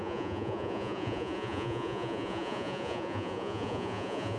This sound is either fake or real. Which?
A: fake